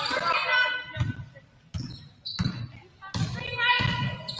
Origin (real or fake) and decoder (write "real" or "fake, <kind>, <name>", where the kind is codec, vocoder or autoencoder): real